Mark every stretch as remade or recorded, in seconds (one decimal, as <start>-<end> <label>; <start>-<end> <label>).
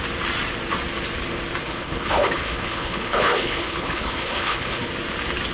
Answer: 0.0-1.6 recorded; 1.6-4.9 remade; 4.9-5.5 recorded